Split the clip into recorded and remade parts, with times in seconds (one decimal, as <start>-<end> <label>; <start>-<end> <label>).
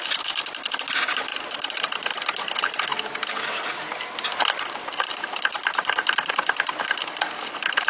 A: 0.0-7.9 recorded